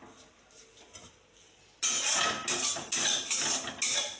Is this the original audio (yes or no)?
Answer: yes